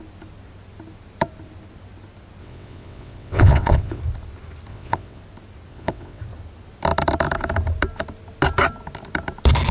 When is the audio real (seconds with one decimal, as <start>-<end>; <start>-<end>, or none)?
0.0-2.4; 4.0-4.7; 5.2-5.7; 6.2-9.7